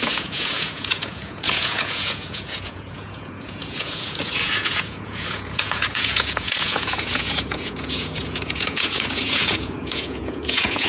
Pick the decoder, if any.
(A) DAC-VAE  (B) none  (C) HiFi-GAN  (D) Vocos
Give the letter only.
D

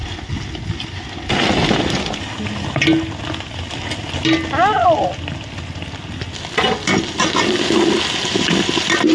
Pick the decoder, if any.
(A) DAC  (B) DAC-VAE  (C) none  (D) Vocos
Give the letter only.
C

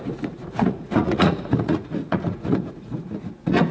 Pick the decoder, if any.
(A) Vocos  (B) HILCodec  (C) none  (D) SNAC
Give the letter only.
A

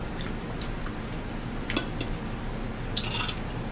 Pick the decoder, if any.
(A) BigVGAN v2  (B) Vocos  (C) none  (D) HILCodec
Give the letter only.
C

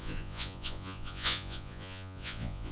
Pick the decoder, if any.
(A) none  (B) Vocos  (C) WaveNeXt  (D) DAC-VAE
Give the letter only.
B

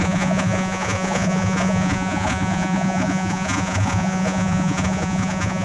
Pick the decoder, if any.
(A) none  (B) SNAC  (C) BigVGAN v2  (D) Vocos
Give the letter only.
D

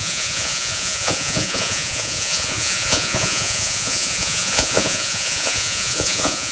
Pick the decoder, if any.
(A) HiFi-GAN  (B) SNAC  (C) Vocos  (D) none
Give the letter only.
C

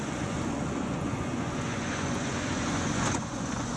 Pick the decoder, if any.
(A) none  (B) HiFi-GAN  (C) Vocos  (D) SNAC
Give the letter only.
C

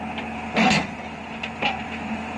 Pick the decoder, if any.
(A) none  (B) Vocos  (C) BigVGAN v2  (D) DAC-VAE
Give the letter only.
A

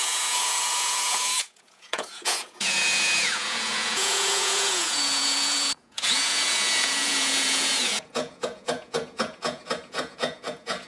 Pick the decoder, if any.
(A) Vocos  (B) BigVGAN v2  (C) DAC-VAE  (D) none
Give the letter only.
A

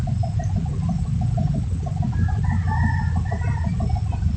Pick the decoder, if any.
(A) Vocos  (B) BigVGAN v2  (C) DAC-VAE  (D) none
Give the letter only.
D